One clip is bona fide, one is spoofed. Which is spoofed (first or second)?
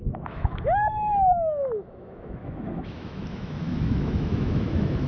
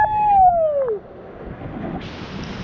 first